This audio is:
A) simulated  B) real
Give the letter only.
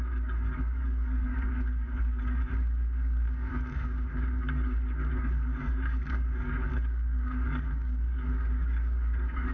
A